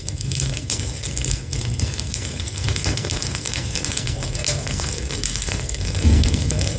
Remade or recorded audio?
remade